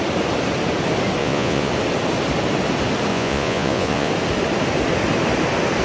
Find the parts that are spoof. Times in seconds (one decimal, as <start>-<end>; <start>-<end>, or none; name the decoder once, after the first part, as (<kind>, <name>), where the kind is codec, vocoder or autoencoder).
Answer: 1.2-1.7 (vocoder, Vocos); 3.1-4.1